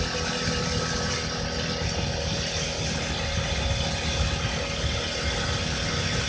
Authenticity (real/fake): real